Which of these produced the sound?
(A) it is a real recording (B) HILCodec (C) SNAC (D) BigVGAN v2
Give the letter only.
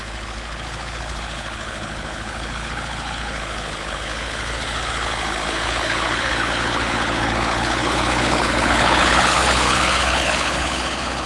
B